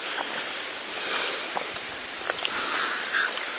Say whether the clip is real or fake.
real